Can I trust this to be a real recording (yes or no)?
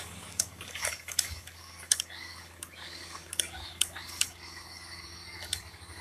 no